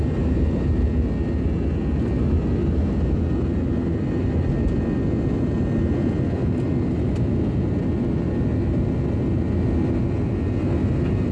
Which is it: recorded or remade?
recorded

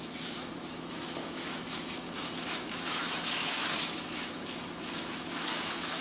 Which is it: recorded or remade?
remade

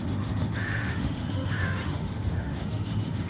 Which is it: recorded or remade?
remade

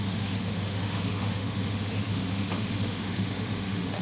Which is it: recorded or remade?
remade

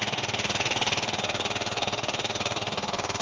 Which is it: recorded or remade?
remade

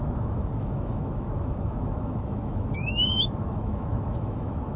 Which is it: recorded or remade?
remade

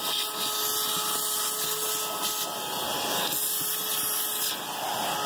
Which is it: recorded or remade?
recorded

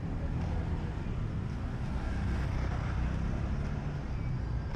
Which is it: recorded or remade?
recorded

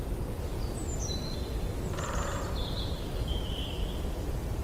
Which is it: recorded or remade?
recorded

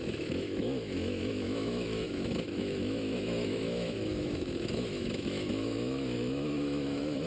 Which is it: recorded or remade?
remade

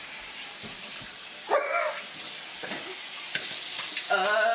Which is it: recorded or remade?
recorded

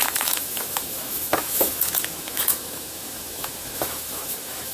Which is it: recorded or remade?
remade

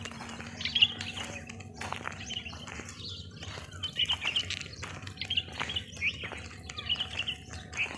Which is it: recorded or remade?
recorded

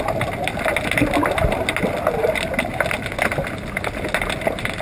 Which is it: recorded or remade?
recorded